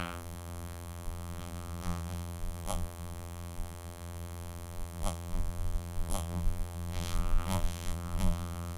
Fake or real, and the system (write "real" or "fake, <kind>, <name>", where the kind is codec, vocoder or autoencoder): fake, vocoder, BigVGAN v2